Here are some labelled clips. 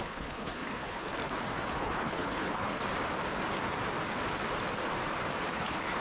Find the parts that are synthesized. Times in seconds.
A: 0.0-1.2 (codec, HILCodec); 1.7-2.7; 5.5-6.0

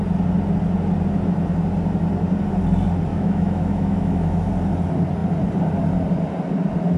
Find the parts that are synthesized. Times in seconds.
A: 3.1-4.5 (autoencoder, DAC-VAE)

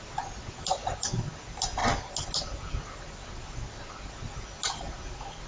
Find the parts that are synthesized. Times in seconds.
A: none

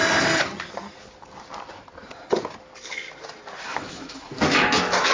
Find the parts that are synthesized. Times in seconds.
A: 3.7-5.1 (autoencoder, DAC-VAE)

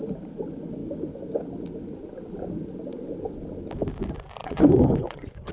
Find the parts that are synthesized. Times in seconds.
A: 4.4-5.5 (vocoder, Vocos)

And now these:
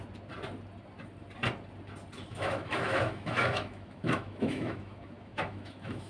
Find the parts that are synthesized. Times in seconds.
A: 2.3-6.1 (autoencoder, DAC-VAE)

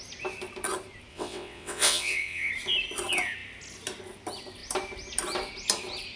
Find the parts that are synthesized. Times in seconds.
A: 1.1-2.5 (vocoder, WaveNeXt)

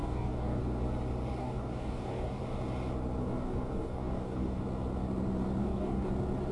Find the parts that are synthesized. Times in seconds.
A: 0.0-0.8 (codec, DAC); 1.4-2.4; 3.2-4.6; 5.6-6.1